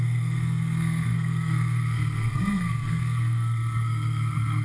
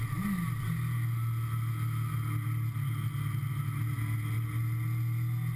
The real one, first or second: second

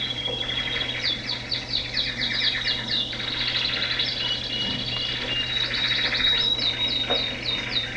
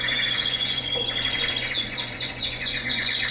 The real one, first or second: first